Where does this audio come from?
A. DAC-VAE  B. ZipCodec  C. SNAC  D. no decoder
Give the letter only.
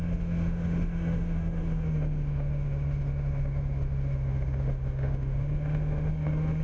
A